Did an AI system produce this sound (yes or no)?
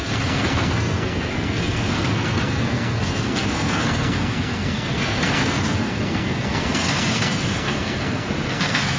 yes